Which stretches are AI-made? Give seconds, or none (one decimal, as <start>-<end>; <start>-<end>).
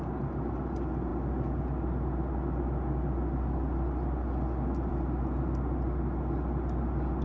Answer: none